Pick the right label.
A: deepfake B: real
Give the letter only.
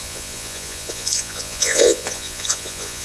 A